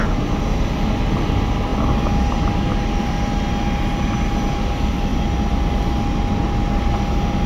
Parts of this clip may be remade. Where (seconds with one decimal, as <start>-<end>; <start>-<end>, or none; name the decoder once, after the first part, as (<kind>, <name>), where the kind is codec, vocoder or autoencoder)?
none